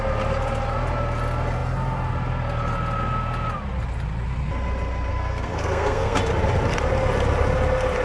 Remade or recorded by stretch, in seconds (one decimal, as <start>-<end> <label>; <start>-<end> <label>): 0.0-5.1 recorded; 5.1-6.2 remade; 6.2-8.0 recorded